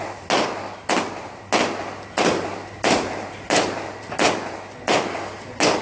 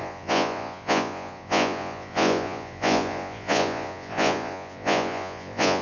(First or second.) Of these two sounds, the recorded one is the first